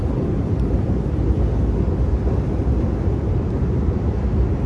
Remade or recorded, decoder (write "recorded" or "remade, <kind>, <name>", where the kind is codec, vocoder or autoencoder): recorded